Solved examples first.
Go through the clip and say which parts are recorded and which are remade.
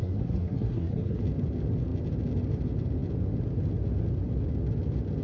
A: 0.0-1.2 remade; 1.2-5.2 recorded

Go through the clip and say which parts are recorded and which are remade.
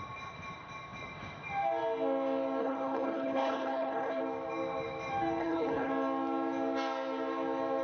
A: 0.0-2.6 recorded; 2.6-4.2 remade; 4.2-5.4 recorded; 5.4-5.9 remade; 5.9-7.8 recorded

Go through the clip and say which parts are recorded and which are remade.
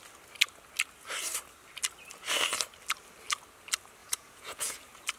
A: 0.0-4.0 recorded; 4.0-4.8 remade; 4.8-5.2 recorded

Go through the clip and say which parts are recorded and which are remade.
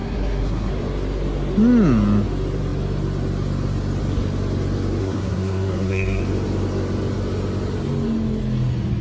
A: 0.0-0.7 remade; 0.7-5.0 recorded; 5.0-6.2 remade; 6.2-9.0 recorded